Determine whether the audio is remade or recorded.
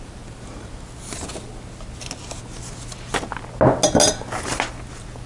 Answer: recorded